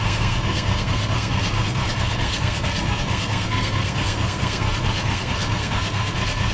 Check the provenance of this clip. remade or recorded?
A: remade